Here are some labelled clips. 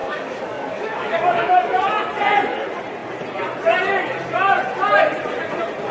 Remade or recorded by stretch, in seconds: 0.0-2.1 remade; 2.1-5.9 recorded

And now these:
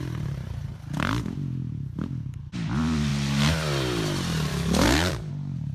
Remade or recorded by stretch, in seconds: 0.0-4.5 recorded; 4.5-5.3 remade; 5.3-5.7 recorded